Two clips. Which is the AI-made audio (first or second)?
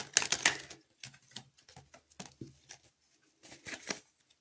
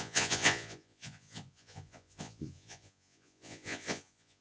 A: second